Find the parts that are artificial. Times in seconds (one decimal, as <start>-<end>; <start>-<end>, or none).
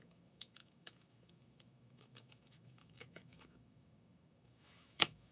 0.0-5.3